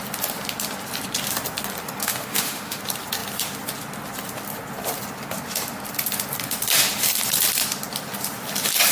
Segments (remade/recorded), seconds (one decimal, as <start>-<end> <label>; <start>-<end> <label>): 0.0-2.0 recorded; 2.0-2.8 remade; 2.8-8.9 recorded

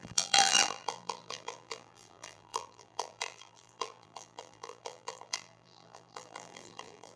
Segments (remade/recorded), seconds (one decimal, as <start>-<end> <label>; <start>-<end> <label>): 0.0-7.2 remade

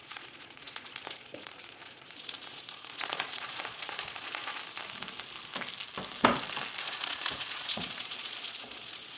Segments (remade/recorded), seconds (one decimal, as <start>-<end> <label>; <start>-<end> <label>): 0.0-4.6 remade; 4.6-6.8 recorded; 6.8-9.2 remade

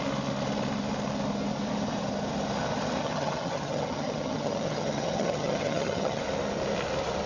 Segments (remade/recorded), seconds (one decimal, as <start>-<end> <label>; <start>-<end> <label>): 0.0-3.0 recorded; 3.0-6.2 remade; 6.2-7.3 recorded

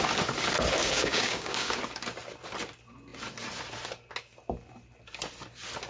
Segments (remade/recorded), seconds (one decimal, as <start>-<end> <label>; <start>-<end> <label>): 0.0-0.8 recorded; 0.8-1.8 remade; 1.8-5.9 recorded

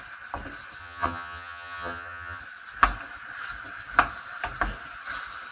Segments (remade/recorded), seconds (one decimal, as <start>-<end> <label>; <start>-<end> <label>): 0.0-0.8 recorded; 0.8-2.4 remade; 2.4-5.5 recorded

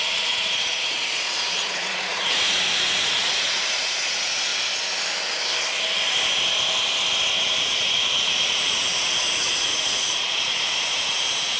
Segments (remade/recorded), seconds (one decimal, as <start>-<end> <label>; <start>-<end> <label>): 0.0-4.5 remade; 4.5-7.6 recorded; 7.6-11.6 remade

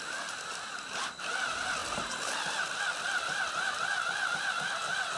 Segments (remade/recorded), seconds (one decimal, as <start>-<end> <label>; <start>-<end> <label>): 0.0-5.2 recorded